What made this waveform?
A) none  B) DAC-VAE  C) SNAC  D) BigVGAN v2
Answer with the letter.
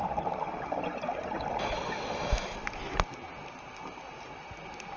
A